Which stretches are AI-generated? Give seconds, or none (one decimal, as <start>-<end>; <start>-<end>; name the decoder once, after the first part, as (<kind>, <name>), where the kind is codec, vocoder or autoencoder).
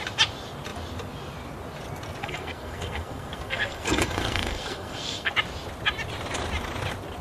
2.2-5.3 (codec, SNAC)